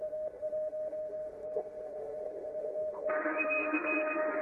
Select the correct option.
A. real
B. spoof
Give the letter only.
B